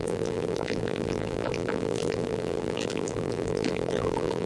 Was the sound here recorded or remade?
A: remade